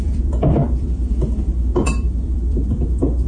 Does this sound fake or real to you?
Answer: fake